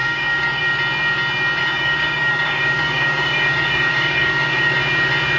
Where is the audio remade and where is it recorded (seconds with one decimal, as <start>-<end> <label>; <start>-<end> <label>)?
0.0-0.6 remade; 0.6-1.6 recorded; 1.6-4.8 remade; 4.8-5.4 recorded